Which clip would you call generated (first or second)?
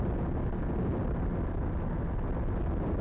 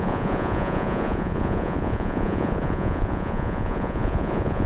second